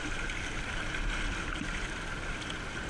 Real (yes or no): yes